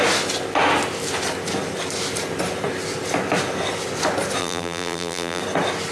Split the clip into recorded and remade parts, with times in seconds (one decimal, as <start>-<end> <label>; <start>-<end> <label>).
0.0-4.4 recorded; 4.4-5.4 remade; 5.4-5.9 recorded